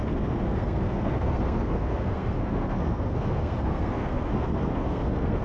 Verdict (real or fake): fake